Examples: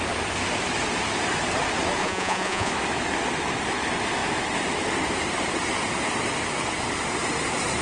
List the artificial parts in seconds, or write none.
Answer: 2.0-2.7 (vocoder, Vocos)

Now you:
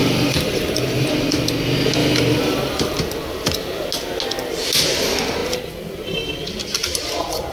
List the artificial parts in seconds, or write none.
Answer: 0.0-1.1 (vocoder, BigVGAN v2); 2.0-3.0